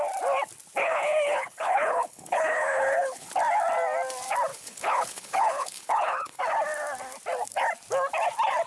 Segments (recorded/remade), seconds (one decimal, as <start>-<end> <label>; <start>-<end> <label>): 0.0-0.8 recorded; 0.8-3.3 remade; 3.3-4.5 recorded; 4.5-6.4 remade; 6.4-8.7 recorded